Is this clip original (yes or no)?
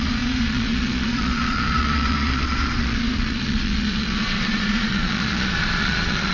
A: no